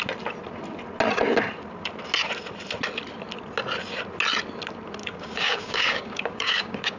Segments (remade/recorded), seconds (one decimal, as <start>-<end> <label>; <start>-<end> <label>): 0.0-5.0 recorded; 5.0-7.0 remade